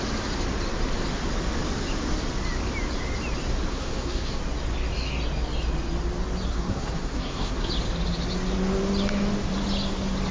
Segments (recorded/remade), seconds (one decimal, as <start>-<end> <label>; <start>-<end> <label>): 0.0-3.7 recorded; 3.7-4.4 remade; 4.4-6.5 recorded; 6.5-7.7 remade; 7.7-10.3 recorded